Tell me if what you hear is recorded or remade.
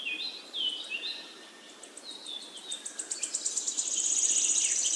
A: recorded